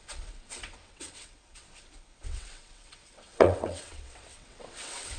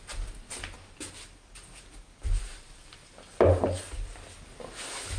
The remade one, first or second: first